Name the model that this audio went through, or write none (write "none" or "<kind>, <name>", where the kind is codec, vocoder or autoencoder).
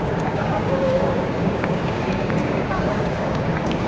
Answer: codec, DAC